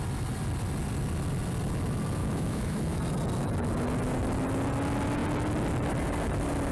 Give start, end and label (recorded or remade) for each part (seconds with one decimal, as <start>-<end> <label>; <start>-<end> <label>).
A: 0.0-2.2 recorded; 2.2-3.0 remade; 3.0-6.7 recorded